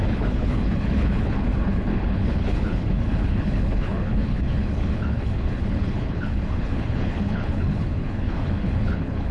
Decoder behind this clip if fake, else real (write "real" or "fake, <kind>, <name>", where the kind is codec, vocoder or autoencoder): fake, codec, HILCodec